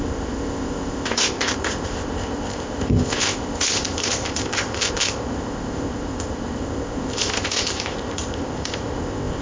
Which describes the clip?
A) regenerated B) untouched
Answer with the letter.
A